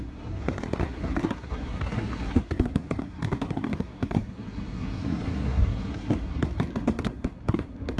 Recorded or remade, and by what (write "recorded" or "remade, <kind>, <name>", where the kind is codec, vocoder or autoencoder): remade, codec, SNAC